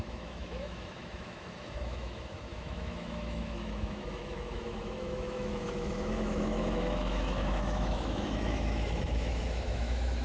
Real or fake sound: fake